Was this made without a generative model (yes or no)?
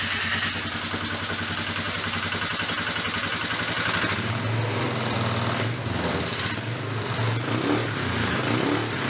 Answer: yes